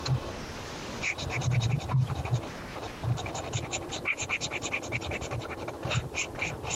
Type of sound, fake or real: fake